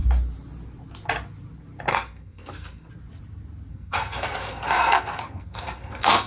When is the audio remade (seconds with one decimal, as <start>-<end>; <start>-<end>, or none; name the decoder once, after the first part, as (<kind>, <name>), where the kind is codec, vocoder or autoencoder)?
1.9-2.9 (codec, SNAC); 3.7-6.3